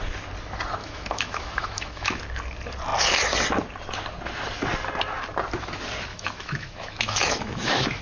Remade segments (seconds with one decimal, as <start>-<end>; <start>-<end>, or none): 0.8-2.2; 6.1-8.0